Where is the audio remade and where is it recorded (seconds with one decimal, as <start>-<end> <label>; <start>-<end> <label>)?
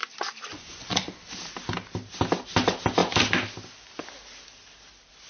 0.0-0.5 recorded; 0.5-1.2 remade; 1.2-5.3 recorded